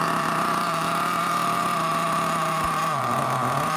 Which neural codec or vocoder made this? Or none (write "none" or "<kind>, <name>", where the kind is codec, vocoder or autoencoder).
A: vocoder, BigVGAN v2